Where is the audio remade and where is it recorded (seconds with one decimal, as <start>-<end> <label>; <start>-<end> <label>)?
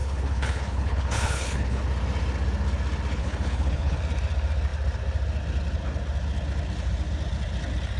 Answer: 0.0-1.8 remade; 1.8-3.2 recorded; 3.2-4.0 remade; 4.0-8.0 recorded